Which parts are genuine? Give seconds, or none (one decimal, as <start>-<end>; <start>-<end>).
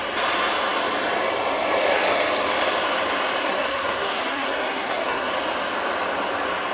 0.0-3.4; 5.3-6.7